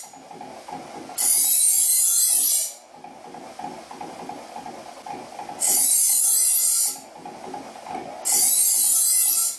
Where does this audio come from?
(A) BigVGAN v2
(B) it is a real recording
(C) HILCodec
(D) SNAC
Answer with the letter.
B